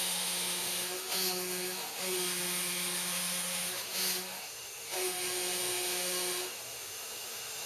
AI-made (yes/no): yes